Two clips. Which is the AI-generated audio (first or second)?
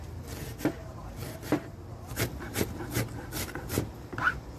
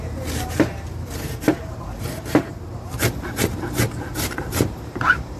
second